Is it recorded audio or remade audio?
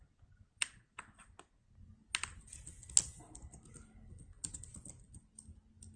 recorded